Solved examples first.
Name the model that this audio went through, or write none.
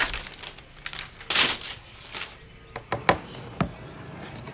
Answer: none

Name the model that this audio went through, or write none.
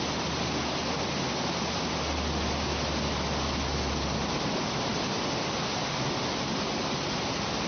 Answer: none